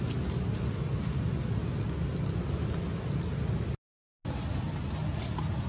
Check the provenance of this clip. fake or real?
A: real